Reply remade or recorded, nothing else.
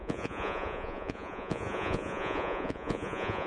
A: remade